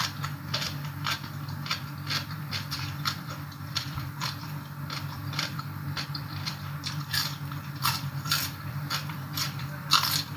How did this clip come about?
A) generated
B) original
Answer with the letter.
A